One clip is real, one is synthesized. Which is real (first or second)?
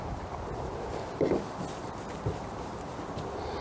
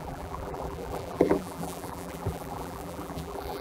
first